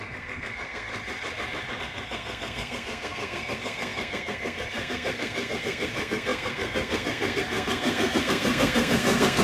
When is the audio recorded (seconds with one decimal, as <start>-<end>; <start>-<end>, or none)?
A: 0.9-1.8